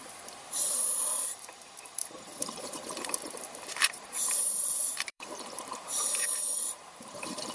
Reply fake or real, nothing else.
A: fake